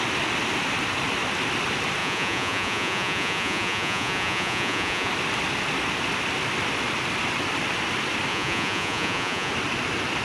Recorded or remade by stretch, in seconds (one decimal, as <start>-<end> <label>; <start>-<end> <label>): 0.0-2.0 recorded; 2.0-5.1 remade; 5.1-8.3 recorded; 8.3-9.5 remade; 9.5-10.2 recorded